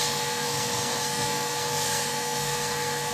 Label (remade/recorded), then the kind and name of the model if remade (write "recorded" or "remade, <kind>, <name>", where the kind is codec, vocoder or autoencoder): remade, codec, SNAC